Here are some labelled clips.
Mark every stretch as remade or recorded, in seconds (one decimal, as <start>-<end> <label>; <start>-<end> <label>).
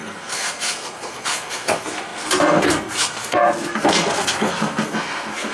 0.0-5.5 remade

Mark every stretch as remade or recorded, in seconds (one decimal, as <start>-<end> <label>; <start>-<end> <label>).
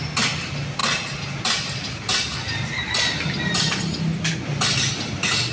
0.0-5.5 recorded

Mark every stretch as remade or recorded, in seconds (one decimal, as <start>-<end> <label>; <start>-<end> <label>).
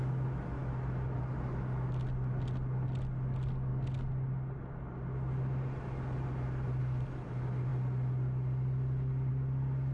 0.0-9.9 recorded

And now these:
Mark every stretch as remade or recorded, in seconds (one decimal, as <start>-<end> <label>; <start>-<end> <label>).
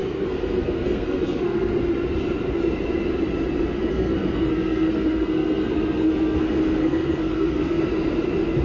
0.0-1.7 remade; 1.7-4.0 recorded; 4.0-7.8 remade; 7.8-8.6 recorded